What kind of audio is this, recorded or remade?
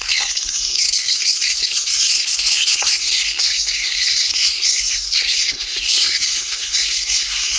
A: remade